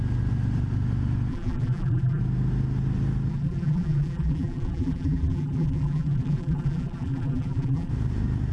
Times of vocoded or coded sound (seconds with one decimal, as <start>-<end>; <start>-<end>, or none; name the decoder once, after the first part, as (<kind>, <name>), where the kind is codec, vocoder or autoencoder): 1.3-2.2 (vocoder, BigVGAN v2); 3.3-7.9